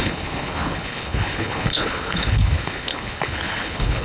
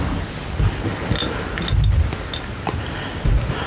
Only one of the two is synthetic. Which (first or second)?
first